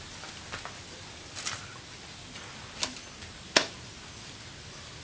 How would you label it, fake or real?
real